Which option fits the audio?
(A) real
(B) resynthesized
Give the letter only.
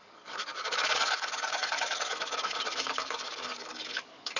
B